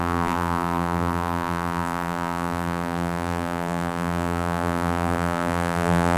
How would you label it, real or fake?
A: fake